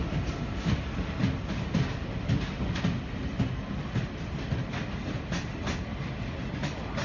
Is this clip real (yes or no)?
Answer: yes